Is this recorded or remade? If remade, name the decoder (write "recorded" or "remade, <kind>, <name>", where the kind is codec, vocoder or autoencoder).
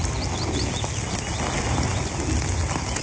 recorded